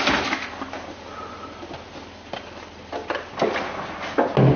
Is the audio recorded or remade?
recorded